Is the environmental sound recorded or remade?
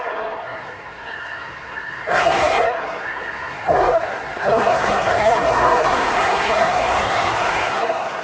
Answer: remade